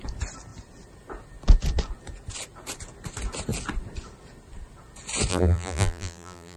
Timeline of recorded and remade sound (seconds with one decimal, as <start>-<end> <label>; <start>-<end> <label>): 0.0-5.3 recorded; 5.3-6.6 remade